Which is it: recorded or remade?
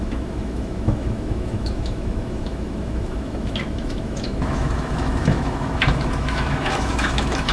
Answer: remade